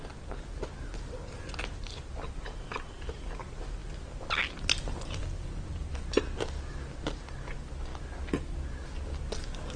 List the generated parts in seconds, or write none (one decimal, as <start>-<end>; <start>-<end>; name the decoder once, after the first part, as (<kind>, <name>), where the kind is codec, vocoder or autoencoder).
none